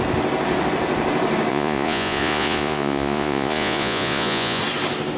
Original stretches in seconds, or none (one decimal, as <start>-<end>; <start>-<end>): 0.0-1.5; 4.6-5.2